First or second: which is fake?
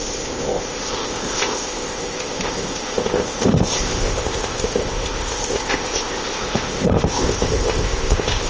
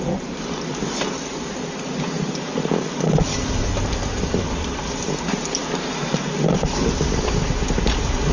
first